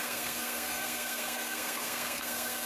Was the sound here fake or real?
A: fake